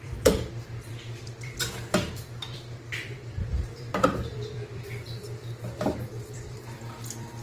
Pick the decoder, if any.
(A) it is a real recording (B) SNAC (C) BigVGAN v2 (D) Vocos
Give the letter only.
C